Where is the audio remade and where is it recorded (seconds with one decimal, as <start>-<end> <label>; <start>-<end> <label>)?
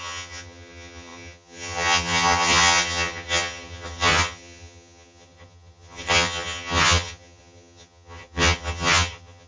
0.0-9.5 remade